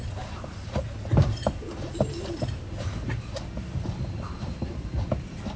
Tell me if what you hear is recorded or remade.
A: recorded